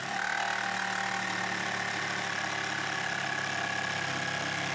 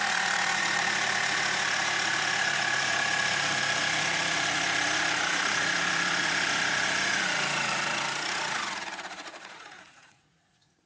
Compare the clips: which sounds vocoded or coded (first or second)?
second